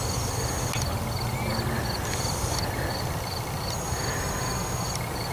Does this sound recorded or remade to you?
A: recorded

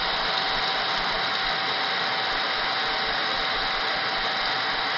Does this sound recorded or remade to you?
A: recorded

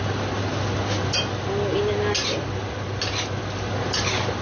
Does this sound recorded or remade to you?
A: recorded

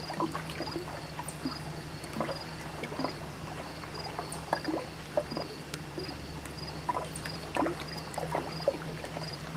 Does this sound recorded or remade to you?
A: recorded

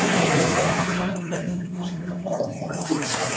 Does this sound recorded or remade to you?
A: remade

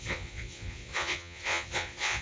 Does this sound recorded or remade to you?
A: remade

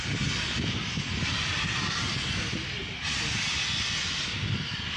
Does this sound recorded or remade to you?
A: recorded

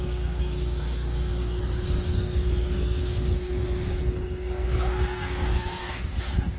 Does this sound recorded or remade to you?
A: remade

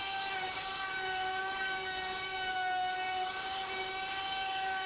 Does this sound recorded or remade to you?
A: remade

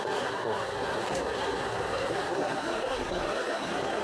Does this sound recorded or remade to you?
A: remade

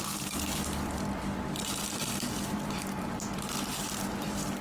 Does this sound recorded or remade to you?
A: remade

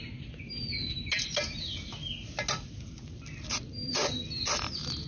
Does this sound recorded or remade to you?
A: recorded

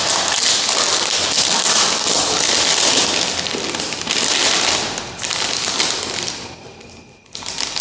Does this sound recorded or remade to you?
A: recorded